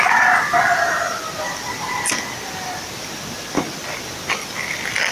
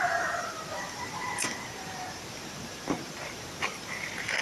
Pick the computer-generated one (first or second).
second